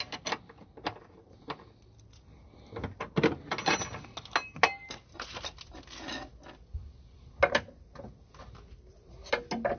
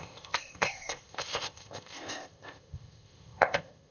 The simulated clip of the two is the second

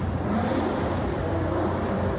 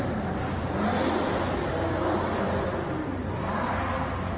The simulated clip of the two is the first